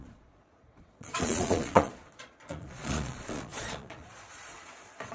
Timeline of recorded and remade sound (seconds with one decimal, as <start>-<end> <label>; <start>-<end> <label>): 0.0-5.1 remade